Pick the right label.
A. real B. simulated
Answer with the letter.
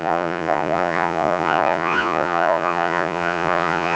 B